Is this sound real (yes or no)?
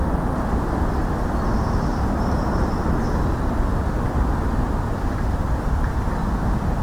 yes